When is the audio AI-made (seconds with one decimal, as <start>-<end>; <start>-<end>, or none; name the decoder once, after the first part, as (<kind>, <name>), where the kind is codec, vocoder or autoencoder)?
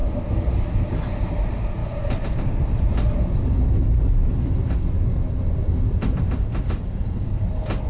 1.8-4.6 (vocoder, BigVGAN v2); 5.1-6.3